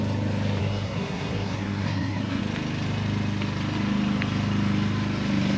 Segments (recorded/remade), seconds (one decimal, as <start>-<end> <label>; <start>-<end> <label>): 0.0-0.6 recorded; 0.6-2.4 remade; 2.4-5.6 recorded